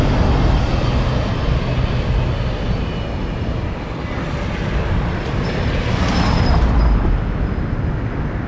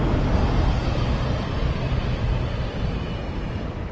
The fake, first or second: second